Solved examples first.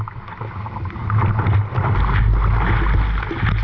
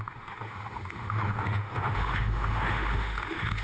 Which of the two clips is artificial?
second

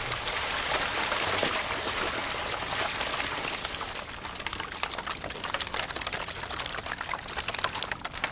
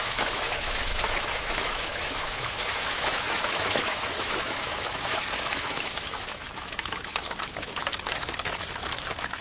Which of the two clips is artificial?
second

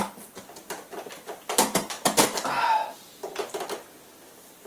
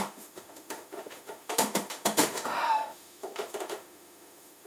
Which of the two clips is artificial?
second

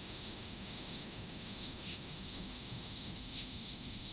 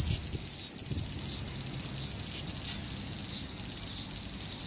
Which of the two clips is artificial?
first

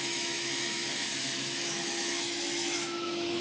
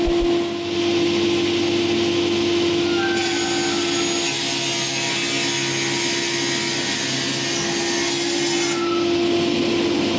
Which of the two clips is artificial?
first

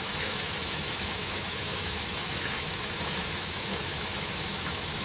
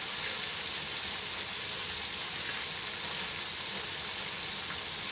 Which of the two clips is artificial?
first